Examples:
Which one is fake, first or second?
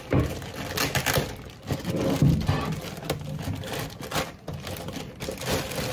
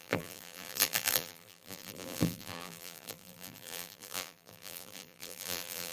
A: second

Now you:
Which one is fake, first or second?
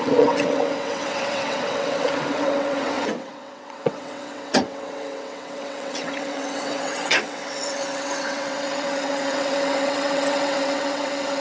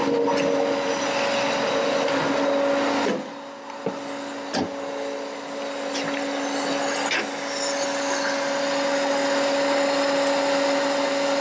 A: first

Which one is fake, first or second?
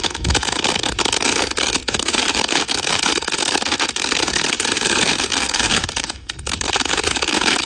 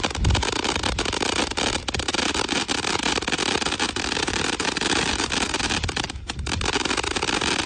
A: first